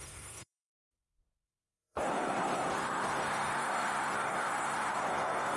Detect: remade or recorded remade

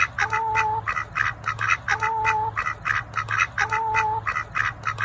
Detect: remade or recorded recorded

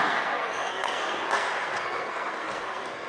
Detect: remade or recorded remade